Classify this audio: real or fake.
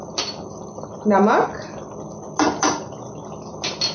real